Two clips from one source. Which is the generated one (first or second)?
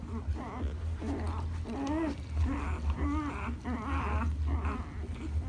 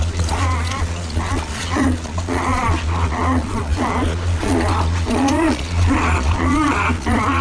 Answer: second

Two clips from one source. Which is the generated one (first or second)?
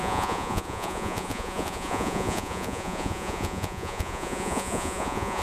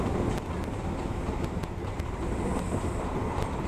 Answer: first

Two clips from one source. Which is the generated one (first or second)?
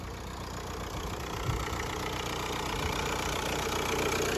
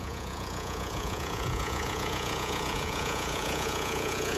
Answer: second